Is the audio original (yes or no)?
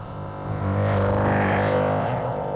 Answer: no